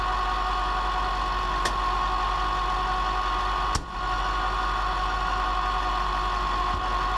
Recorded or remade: recorded